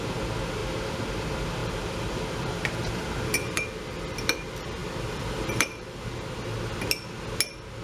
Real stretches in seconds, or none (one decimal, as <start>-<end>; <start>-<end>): 0.0-1.6; 3.7-4.8; 6.1-7.8

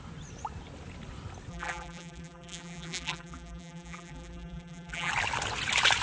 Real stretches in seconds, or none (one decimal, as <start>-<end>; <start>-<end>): 0.0-1.5; 5.1-6.0

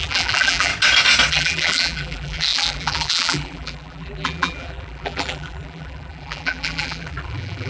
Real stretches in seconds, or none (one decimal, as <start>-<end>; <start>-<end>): 0.7-1.3

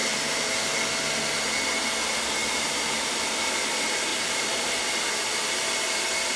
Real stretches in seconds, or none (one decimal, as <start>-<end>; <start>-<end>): 0.8-2.4; 3.6-4.1; 5.0-6.4

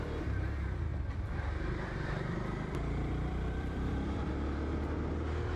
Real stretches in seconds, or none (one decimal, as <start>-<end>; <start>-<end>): 0.0-0.9; 4.3-5.6

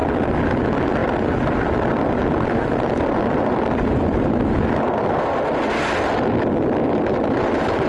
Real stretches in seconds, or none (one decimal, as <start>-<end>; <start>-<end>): 0.0-7.9